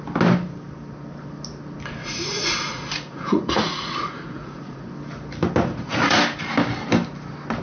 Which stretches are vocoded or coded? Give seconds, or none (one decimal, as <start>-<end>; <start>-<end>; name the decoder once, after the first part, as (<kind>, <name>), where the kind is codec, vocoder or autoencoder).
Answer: 2.0-4.9 (vocoder, Vocos); 5.7-6.2